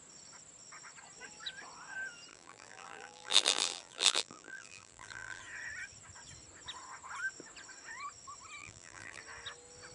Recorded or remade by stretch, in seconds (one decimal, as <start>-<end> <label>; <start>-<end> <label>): 0.0-2.3 recorded; 2.3-5.4 remade; 5.4-8.6 recorded; 8.6-9.2 remade; 9.2-9.9 recorded